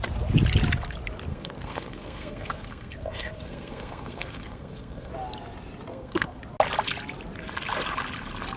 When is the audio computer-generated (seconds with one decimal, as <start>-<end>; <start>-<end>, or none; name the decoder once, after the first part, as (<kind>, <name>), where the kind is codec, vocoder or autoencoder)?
1.3-5.1 (codec, SNAC); 5.9-6.4